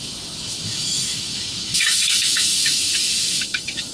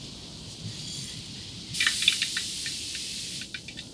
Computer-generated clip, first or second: first